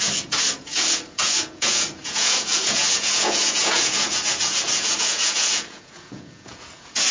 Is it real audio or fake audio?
fake